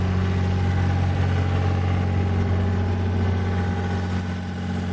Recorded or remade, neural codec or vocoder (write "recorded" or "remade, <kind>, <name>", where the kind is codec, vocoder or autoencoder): recorded